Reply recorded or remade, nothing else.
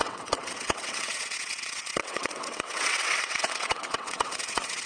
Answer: remade